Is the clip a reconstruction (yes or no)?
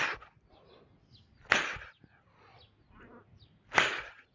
no